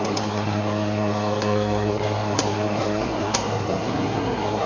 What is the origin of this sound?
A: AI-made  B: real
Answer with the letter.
A